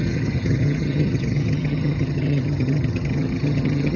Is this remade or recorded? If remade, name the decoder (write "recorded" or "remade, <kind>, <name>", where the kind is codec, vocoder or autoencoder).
remade, vocoder, HiFi-GAN